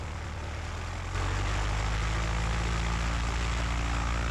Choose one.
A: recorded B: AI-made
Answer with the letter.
A